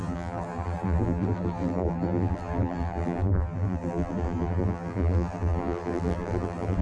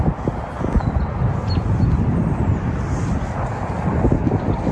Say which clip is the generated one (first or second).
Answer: first